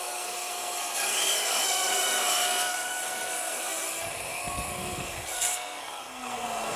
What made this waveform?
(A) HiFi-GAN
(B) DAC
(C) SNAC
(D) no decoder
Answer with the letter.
C